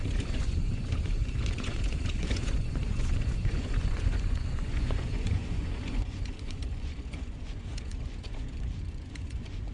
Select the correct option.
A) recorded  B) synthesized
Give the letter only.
B